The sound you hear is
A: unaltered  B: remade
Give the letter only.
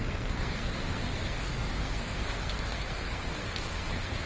B